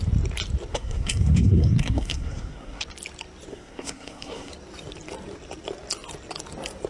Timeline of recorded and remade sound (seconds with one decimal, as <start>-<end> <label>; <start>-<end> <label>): 0.0-0.7 recorded; 0.7-2.8 remade; 2.8-3.5 recorded; 3.5-4.5 remade; 4.5-6.9 recorded